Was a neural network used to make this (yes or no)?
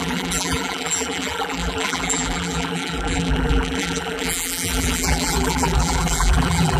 yes